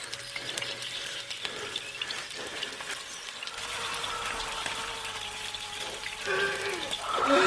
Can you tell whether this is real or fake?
real